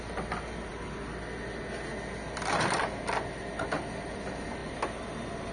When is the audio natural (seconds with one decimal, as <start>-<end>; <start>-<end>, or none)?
0.0-5.5